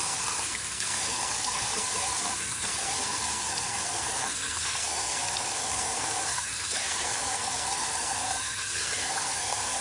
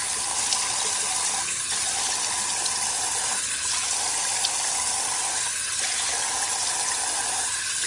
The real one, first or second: second